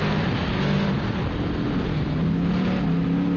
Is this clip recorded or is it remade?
recorded